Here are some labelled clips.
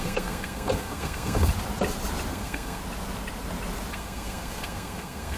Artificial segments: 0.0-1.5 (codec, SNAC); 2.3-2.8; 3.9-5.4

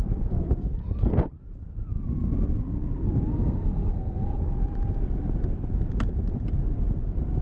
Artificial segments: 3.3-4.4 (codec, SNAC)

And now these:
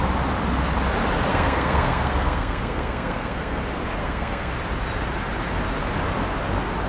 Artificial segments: 1.3-3.6 (codec, SNAC); 4.0-4.5

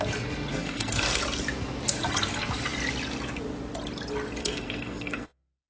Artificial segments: 0.5-1.2 (codec, SNAC); 4.4-5.7

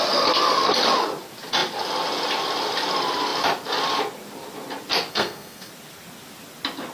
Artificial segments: 5.1-5.7 (codec, SNAC)